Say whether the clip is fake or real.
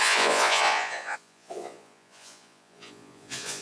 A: fake